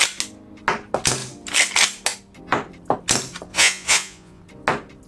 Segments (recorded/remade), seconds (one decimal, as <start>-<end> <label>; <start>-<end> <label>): 0.0-3.5 recorded; 3.5-4.4 remade; 4.4-5.1 recorded